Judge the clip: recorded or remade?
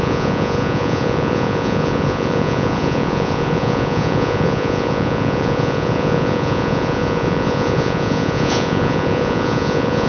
remade